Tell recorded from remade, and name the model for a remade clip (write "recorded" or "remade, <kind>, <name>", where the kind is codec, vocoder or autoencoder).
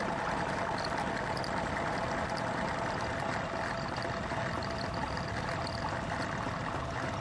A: recorded